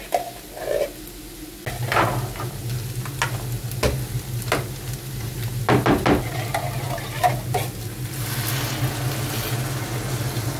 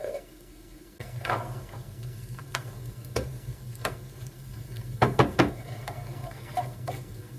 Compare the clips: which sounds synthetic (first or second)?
second